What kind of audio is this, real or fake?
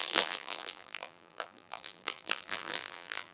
fake